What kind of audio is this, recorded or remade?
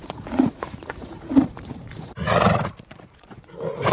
remade